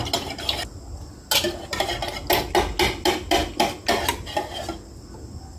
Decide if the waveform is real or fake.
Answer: real